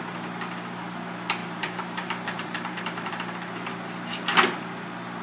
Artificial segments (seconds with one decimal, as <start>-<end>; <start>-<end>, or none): 1.4-3.1